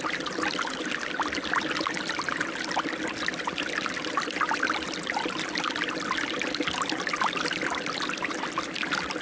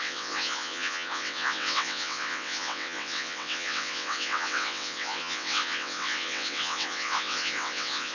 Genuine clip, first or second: first